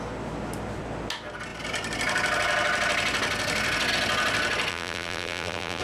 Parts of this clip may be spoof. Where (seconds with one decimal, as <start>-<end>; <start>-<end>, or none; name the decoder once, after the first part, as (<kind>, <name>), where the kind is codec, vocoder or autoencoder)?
4.7-5.8 (vocoder, BigVGAN v2)